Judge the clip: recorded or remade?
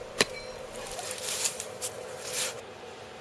remade